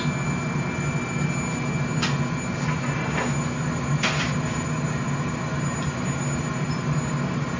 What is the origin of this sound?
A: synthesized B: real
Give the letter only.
B